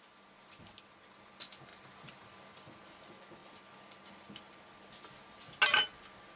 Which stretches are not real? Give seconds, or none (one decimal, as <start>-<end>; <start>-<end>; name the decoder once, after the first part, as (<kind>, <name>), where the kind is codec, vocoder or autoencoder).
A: none